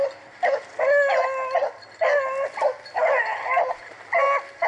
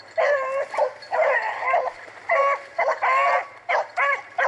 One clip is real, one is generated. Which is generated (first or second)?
second